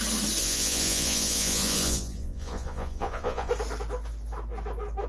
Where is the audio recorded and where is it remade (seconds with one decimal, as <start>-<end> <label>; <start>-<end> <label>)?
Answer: 0.0-0.4 recorded; 0.4-3.5 remade; 3.5-5.1 recorded